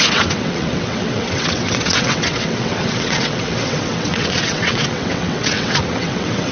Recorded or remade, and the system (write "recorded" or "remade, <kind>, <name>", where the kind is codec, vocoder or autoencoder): remade, vocoder, WaveNeXt